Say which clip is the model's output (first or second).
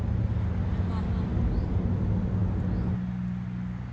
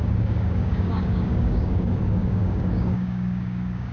second